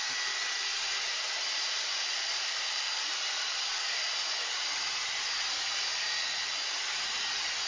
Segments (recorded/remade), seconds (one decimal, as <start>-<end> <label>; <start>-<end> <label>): 0.0-0.7 recorded; 0.7-5.3 remade; 5.3-7.7 recorded